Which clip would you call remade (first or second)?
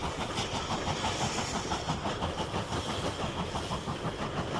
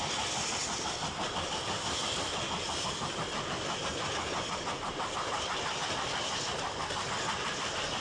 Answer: first